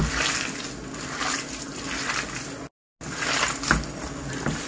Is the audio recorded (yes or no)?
yes